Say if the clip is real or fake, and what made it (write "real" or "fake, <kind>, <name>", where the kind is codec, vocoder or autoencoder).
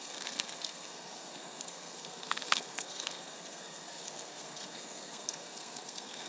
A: fake, codec, SNAC